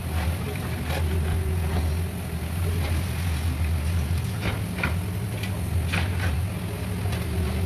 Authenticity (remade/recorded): recorded